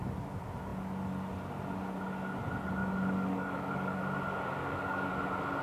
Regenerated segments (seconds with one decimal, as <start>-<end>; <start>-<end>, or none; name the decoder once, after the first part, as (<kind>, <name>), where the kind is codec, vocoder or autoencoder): 2.8-4.0 (codec, DAC); 4.6-5.1